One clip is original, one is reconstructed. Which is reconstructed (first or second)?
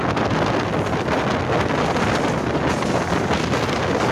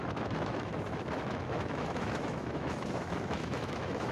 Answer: second